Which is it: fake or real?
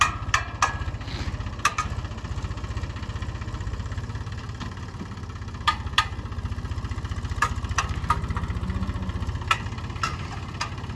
real